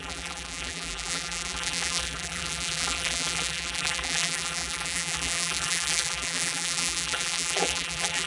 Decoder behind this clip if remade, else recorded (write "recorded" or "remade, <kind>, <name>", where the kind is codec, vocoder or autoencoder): remade, vocoder, BigVGAN v2